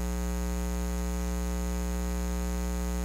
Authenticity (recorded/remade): recorded